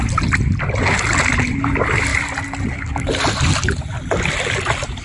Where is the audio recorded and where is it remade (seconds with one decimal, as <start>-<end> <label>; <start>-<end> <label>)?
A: 0.0-5.0 recorded